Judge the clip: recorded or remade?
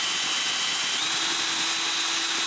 recorded